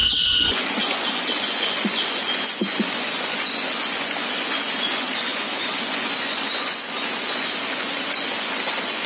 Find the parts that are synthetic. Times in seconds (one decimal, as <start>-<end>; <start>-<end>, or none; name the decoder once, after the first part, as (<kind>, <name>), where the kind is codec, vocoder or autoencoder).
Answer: 0.0-9.1 (vocoder, Vocos)